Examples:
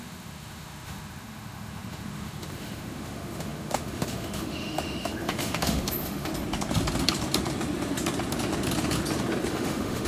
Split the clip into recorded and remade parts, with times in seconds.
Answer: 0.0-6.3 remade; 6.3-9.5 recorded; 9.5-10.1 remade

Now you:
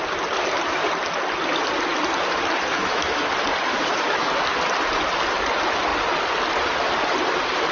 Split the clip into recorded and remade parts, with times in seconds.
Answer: 0.0-2.7 recorded; 2.7-3.3 remade; 3.3-3.7 recorded; 3.7-4.3 remade; 4.3-7.7 recorded

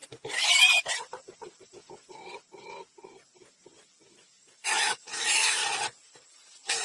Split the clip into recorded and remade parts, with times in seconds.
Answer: 0.0-4.1 recorded; 4.1-5.6 remade; 5.6-6.8 recorded

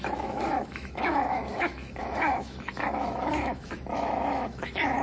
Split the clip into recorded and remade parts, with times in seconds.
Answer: 0.0-5.0 remade

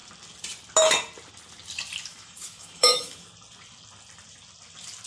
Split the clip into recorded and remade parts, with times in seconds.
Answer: 0.0-2.1 recorded; 2.1-3.3 remade; 3.3-5.1 recorded